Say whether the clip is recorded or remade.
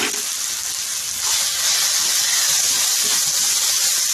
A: recorded